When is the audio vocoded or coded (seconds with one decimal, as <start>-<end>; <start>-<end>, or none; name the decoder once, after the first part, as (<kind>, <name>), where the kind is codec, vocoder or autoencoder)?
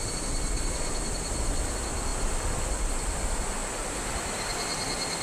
3.6-4.4 (vocoder, BigVGAN v2)